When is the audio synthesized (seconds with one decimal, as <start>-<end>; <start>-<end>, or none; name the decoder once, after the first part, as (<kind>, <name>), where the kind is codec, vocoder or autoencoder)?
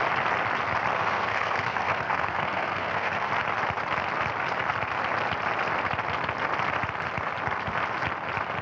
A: 0.9-3.3 (codec, SNAC)